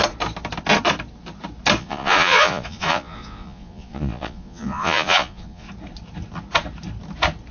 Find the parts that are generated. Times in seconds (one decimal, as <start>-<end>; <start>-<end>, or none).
1.8-5.7